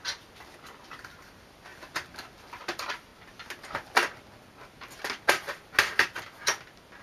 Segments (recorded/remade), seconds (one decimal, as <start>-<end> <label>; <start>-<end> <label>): 0.0-1.7 remade; 1.7-2.4 recorded; 2.4-3.1 remade; 3.1-7.0 recorded